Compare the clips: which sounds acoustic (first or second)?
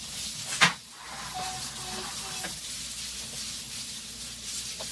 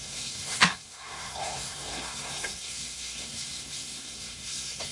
first